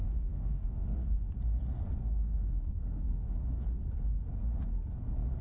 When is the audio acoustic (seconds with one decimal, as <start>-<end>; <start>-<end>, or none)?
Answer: 1.3-2.0; 3.2-5.4